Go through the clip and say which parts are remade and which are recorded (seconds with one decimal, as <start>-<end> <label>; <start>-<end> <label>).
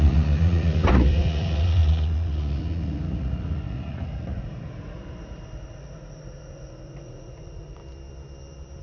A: 0.0-7.8 remade; 7.8-8.8 recorded